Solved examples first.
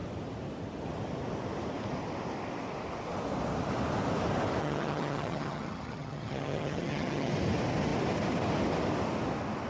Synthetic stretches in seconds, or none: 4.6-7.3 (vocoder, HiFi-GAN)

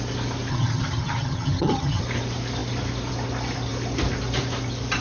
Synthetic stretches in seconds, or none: 0.5-2.0 (vocoder, HiFi-GAN)

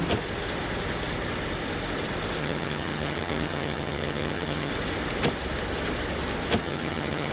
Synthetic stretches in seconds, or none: 2.4-4.7 (vocoder, HiFi-GAN); 6.6-7.3

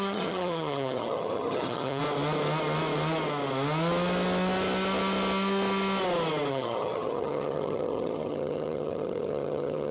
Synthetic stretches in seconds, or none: 0.0-2.0 (vocoder, HiFi-GAN); 6.5-9.9

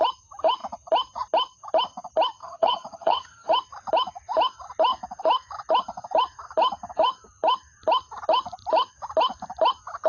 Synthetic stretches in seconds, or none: 2.4-3.5 (vocoder, HiFi-GAN)

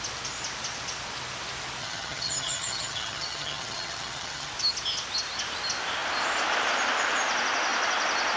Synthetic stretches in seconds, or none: 1.8-4.5 (vocoder, HiFi-GAN)